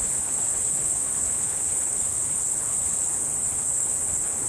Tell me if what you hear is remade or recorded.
remade